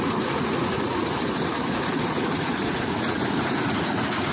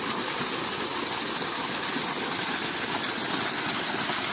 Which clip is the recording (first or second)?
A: second